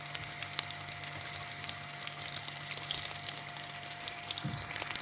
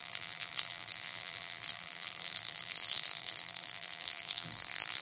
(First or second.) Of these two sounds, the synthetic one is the second